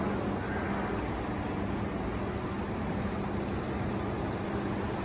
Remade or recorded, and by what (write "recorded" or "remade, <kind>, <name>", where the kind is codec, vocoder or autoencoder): recorded